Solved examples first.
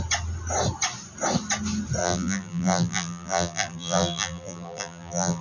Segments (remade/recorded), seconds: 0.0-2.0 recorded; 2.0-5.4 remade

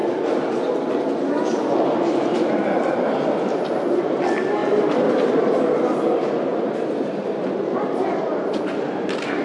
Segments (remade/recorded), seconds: 0.0-6.5 remade; 6.5-7.2 recorded; 7.2-9.4 remade

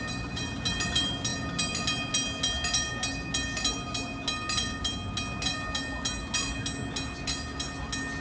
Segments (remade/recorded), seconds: 0.0-8.2 recorded

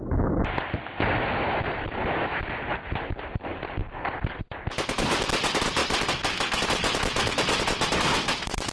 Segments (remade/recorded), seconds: 0.0-3.5 recorded; 3.5-4.4 remade; 4.4-8.7 recorded

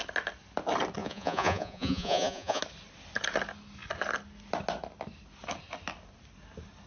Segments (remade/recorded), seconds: 0.0-1.0 recorded; 1.0-2.6 remade; 2.6-6.9 recorded

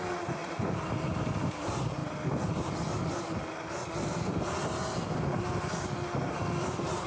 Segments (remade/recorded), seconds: 0.0-7.1 recorded

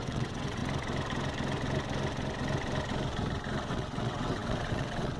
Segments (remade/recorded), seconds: 0.0-0.6 remade; 0.6-3.7 recorded; 3.7-5.2 remade

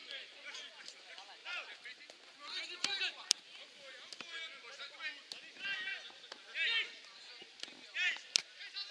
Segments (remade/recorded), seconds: 0.0-0.8 remade; 0.8-1.4 recorded; 1.4-2.1 remade; 2.1-8.9 recorded